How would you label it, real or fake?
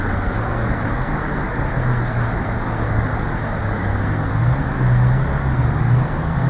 fake